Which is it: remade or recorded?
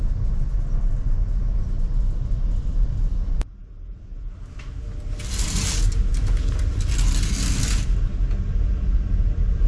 recorded